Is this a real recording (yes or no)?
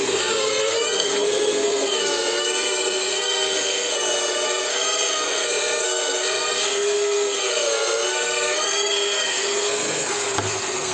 no